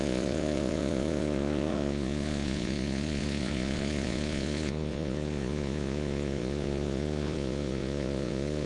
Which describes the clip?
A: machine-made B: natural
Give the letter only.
A